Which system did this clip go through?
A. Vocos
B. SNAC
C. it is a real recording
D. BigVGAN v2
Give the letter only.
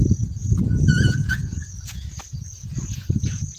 A